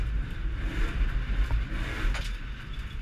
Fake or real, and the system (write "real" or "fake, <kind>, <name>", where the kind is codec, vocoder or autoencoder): fake, vocoder, BigVGAN v2